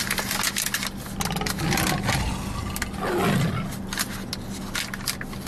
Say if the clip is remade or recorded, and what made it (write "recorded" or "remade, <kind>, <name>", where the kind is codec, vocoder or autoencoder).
recorded